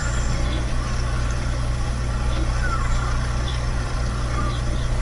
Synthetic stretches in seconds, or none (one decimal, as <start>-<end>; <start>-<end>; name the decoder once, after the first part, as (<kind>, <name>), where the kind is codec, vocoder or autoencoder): 0.0-0.7 (vocoder, BigVGAN v2); 3.5-4.1